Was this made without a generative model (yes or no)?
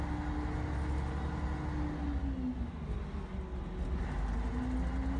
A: yes